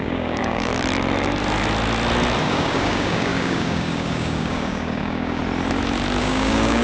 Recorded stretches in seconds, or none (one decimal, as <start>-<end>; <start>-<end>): 0.7-2.4; 5.4-6.2